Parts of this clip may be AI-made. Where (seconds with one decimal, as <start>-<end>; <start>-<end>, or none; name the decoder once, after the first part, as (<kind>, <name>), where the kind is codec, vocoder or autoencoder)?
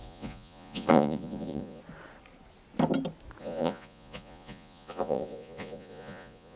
0.0-1.8 (vocoder, Vocos); 3.4-6.6